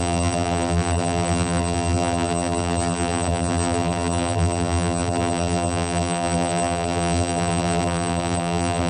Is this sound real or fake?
fake